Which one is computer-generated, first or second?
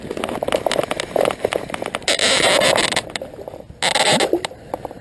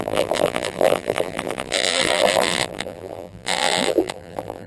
second